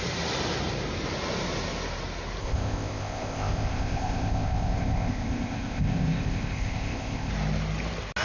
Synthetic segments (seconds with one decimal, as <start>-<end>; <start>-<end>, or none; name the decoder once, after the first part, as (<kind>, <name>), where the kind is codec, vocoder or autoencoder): 2.4-7.3 (codec, ZipCodec)